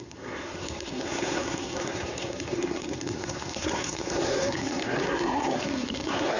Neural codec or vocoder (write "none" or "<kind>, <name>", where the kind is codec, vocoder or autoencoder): codec, SNAC